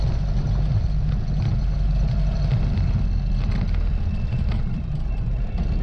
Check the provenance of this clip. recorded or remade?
recorded